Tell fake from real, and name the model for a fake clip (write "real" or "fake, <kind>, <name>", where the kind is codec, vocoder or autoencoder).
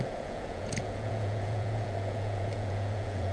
fake, vocoder, Vocos